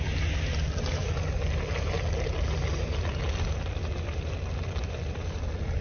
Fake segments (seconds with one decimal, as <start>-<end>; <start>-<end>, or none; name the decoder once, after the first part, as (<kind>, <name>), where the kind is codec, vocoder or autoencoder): none